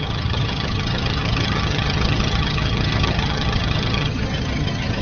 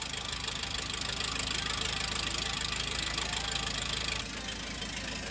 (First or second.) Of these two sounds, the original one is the second